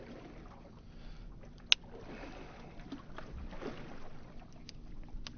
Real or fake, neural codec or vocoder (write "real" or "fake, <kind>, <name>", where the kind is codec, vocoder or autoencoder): real